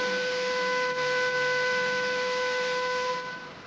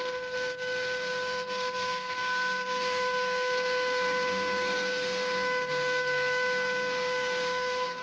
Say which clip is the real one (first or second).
first